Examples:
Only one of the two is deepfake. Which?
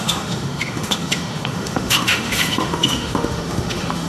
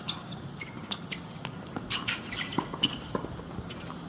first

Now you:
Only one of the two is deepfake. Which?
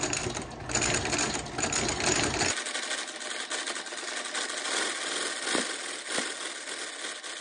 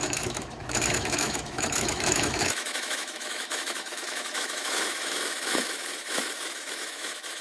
second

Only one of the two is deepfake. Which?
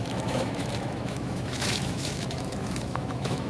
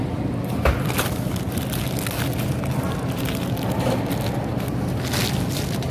first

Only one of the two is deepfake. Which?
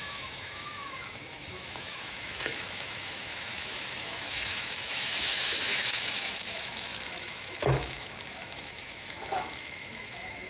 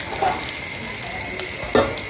first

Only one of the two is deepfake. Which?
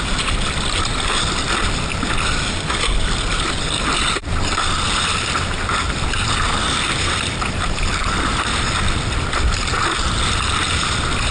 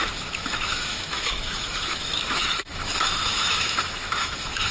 second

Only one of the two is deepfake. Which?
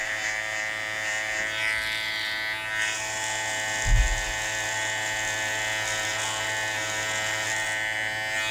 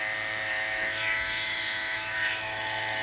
second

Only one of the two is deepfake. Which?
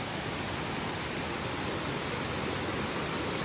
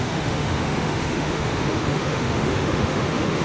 second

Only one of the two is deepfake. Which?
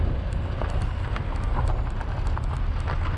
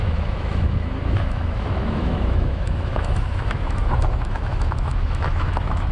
second